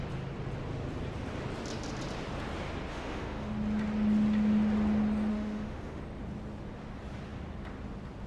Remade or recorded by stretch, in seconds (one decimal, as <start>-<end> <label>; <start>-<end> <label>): 0.0-2.9 recorded; 2.9-3.5 remade; 3.5-5.3 recorded; 5.3-6.0 remade; 6.0-8.3 recorded